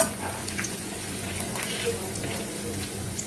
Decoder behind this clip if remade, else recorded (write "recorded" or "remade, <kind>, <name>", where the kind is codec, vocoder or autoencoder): remade, vocoder, Vocos